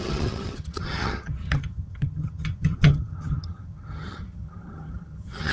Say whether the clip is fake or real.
fake